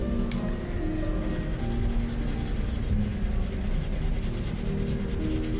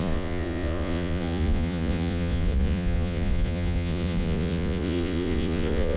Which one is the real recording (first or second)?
first